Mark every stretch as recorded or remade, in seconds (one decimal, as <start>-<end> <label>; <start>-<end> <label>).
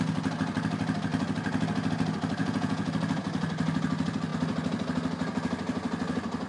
0.0-2.4 recorded; 2.4-2.9 remade; 2.9-6.5 recorded